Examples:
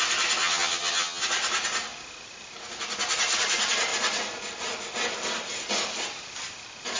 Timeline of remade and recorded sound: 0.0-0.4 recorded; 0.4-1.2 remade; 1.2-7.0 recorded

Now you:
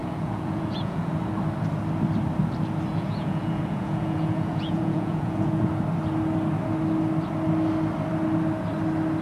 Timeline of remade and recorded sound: 0.0-1.1 remade; 1.1-2.9 recorded; 2.9-5.7 remade; 5.7-9.2 recorded

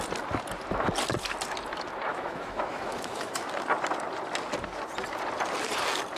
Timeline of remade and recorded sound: 0.0-2.1 recorded; 2.1-3.5 remade; 3.5-6.2 recorded

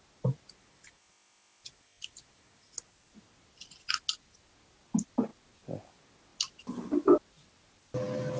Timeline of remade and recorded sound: 0.0-8.4 recorded